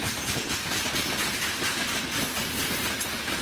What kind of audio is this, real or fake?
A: real